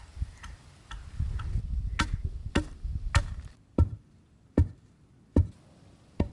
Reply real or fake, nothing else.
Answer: real